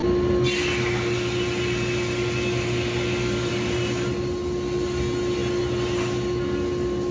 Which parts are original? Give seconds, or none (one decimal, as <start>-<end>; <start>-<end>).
0.0-7.1